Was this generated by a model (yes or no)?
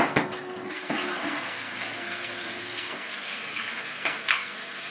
yes